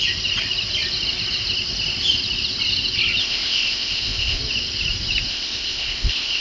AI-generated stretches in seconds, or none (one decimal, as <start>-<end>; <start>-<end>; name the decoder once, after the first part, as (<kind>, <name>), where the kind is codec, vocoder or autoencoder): 3.2-4.4 (codec, ZipCodec); 5.3-6.4